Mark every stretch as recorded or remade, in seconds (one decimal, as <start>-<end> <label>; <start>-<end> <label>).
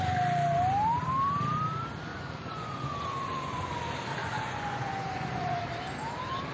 0.0-2.1 recorded; 2.1-3.7 remade; 3.7-4.2 recorded; 4.2-5.6 remade; 5.6-6.5 recorded